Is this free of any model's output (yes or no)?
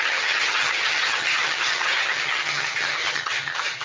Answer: no